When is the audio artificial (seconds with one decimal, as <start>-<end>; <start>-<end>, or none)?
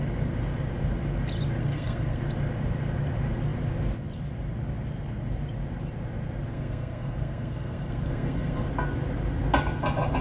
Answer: 1.6-2.2; 6.5-8.7